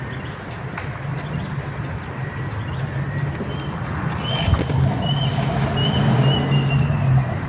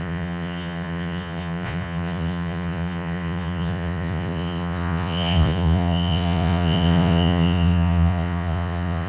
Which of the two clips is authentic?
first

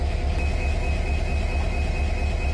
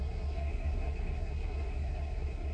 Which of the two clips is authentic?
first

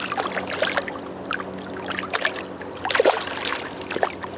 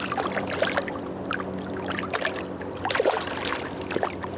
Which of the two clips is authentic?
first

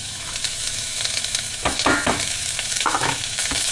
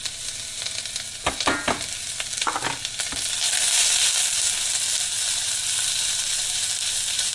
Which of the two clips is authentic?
second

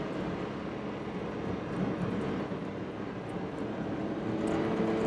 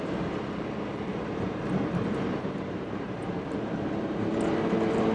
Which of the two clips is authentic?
first